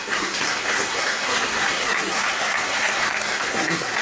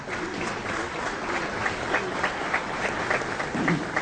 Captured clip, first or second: second